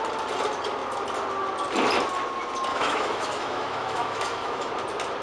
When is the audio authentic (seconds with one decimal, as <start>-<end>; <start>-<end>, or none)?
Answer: 0.0-2.7; 4.7-5.2